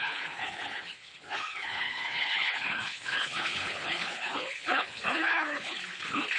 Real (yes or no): no